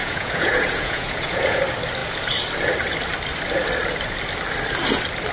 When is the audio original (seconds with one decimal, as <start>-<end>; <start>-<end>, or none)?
1.6-5.3